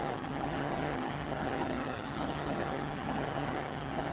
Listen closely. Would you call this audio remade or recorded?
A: remade